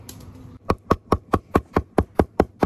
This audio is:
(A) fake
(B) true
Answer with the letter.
A